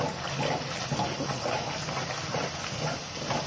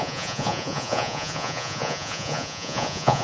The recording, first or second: first